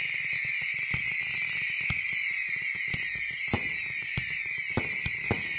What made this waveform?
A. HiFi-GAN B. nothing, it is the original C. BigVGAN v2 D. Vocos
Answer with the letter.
B